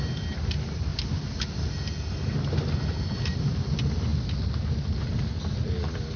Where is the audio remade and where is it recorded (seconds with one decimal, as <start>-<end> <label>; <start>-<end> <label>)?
0.0-6.2 recorded